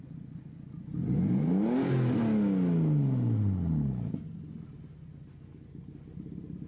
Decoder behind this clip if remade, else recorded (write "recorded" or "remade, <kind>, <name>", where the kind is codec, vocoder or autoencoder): recorded